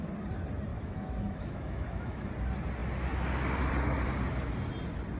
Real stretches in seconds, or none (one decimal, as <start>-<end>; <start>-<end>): 0.0-0.7; 2.3-5.2